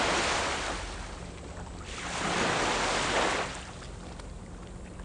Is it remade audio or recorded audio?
recorded